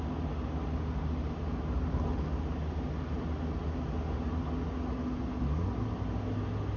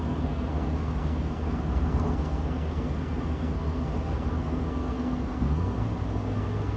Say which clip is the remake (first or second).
second